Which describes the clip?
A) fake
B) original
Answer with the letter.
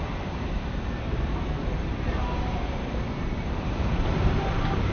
A